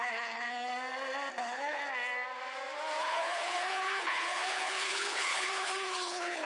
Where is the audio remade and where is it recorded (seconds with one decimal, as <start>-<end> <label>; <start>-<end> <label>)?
0.0-0.7 remade; 0.7-1.4 recorded; 1.4-1.8 remade; 1.8-3.0 recorded; 3.0-6.4 remade